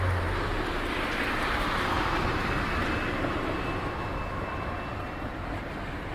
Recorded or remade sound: recorded